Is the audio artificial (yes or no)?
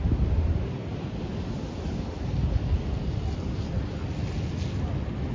no